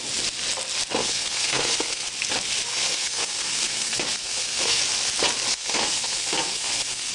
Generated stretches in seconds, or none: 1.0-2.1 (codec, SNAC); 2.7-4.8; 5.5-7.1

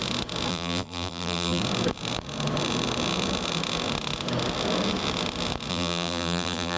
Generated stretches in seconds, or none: 0.5-1.6 (vocoder, BigVGAN v2); 5.7-6.8

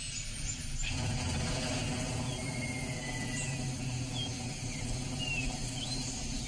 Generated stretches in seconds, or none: none

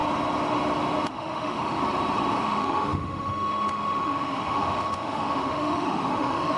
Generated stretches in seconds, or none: 1.1-1.8 (autoencoder, DAC-VAE); 2.4-6.6

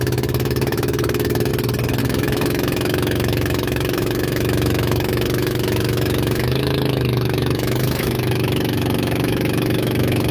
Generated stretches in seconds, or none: 0.0-1.5 (autoencoder, DAC-VAE); 2.0-10.3

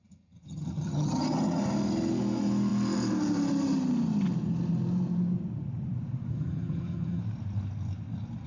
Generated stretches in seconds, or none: 0.0-1.6 (vocoder, HiFi-GAN); 6.3-7.2